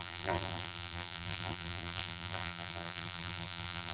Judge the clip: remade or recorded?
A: remade